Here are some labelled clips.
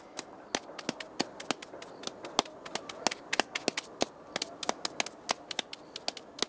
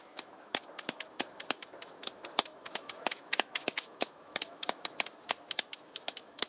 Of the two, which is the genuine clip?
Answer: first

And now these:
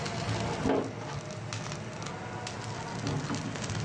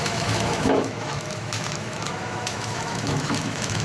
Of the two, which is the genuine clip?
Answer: first